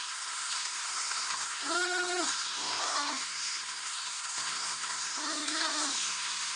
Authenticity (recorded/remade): remade